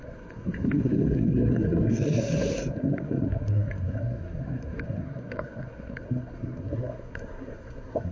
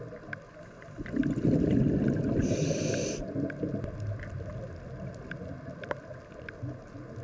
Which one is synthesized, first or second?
first